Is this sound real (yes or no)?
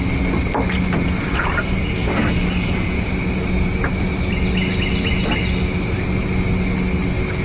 yes